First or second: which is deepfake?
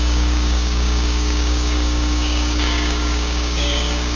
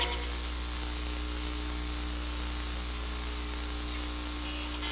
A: first